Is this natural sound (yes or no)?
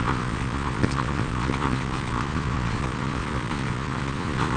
no